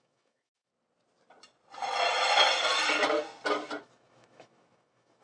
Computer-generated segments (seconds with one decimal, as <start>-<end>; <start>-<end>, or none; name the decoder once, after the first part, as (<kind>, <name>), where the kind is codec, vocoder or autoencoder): 0.0-0.7 (autoencoder, DAC-VAE); 3.8-5.2